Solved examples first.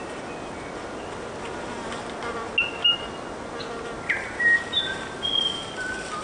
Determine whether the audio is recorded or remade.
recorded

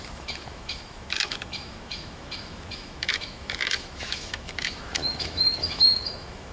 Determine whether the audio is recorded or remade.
remade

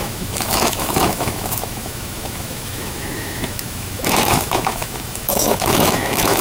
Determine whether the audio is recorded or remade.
remade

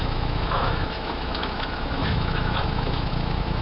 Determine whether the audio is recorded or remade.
remade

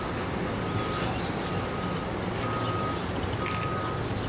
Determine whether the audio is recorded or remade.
recorded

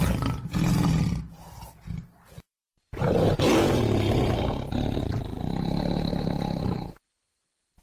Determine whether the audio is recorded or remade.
recorded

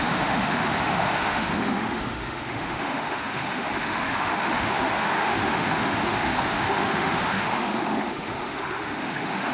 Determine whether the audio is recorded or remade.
remade